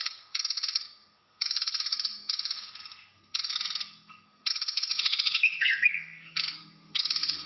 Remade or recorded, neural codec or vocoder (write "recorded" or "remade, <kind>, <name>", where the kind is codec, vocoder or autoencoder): remade, codec, SNAC